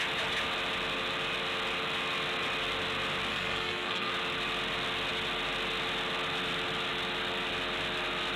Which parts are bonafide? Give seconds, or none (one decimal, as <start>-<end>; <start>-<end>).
0.0-3.3; 4.1-8.4